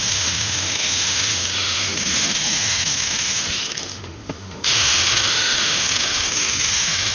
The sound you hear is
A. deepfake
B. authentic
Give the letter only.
A